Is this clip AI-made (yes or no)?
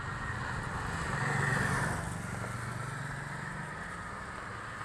no